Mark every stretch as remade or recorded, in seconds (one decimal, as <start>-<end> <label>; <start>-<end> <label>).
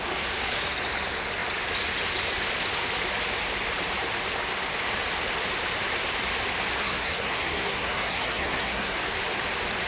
0.0-6.8 recorded; 6.8-9.0 remade; 9.0-9.9 recorded